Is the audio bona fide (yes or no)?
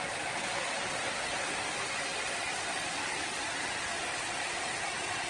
yes